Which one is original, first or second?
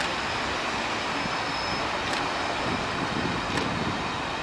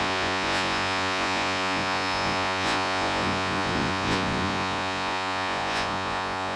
first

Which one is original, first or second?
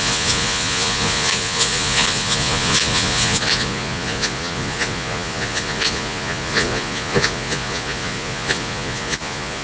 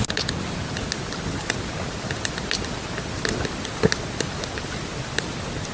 second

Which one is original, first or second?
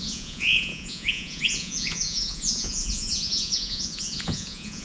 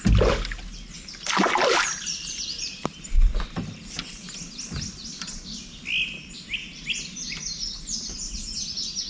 second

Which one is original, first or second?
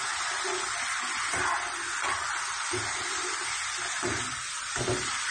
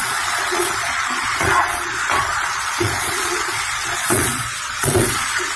first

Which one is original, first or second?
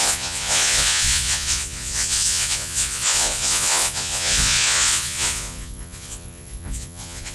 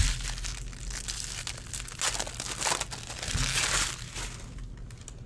second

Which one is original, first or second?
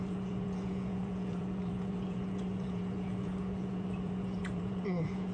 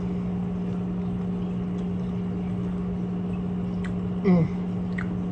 second